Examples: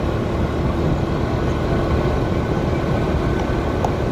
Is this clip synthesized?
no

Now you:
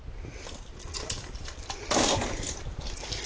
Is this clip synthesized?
no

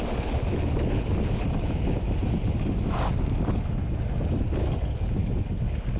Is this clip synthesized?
no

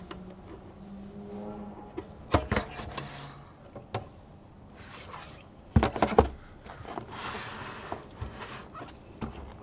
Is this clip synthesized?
no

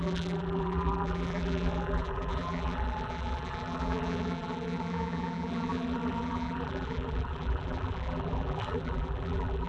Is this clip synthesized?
yes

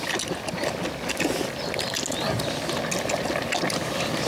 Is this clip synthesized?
no